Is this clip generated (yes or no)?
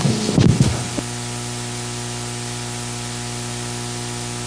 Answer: no